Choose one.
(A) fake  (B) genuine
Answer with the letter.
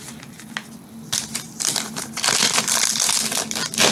B